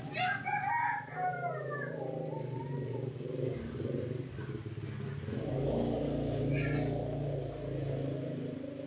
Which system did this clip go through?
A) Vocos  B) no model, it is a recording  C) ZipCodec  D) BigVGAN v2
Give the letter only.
B